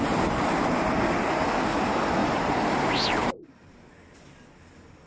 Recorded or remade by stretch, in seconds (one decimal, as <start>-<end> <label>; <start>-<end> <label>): 0.0-2.2 recorded; 2.2-3.9 remade; 3.9-5.1 recorded